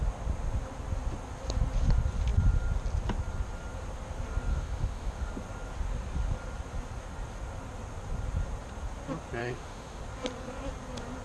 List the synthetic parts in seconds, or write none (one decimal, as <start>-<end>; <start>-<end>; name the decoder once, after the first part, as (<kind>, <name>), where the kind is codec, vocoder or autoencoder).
4.5-5.3 (autoencoder, DAC-VAE); 9.4-10.0